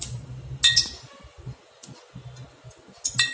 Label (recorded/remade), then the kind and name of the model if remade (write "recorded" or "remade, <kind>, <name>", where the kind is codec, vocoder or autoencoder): recorded